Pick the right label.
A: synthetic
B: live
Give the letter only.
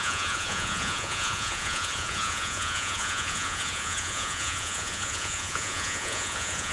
A